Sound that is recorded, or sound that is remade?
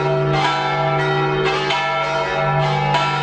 recorded